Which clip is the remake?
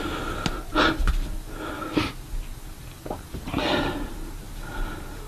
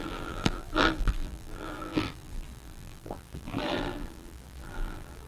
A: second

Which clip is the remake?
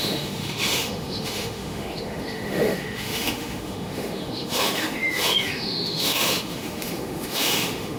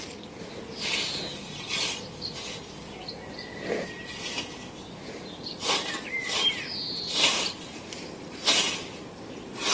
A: first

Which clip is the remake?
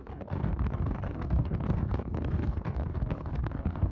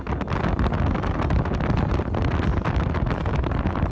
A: first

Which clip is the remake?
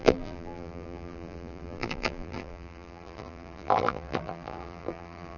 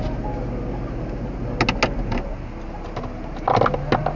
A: first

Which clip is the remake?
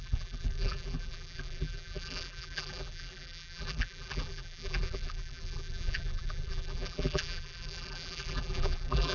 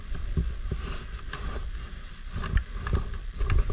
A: first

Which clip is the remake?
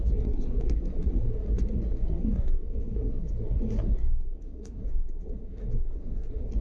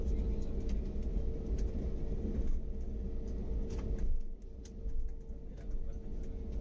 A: first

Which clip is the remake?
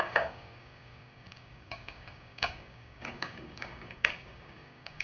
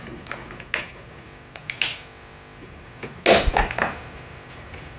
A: first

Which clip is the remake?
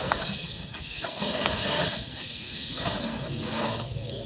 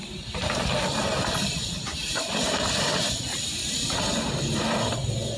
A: first